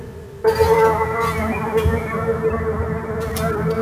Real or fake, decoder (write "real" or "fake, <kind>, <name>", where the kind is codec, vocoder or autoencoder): real